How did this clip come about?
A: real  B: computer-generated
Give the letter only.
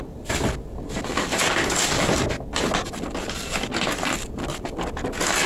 A